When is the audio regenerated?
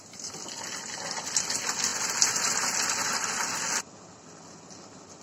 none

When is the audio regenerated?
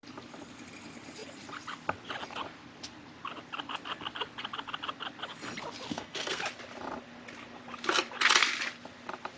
5.9-6.4 (codec, SNAC)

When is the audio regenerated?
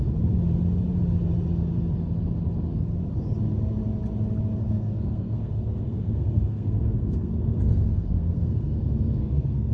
4.6-9.7 (codec, SNAC)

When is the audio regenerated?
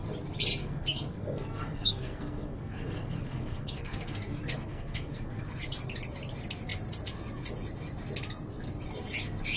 0.6-5.4 (codec, SNAC)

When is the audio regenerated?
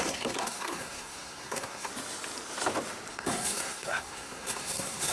0.0-1.9 (codec, SNAC); 3.1-5.1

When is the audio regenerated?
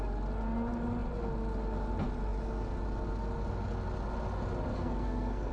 4.7-5.5 (codec, SNAC)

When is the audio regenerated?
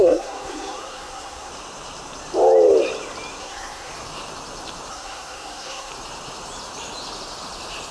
0.0-1.5 (codec, SNAC); 3.4-3.9; 4.9-5.9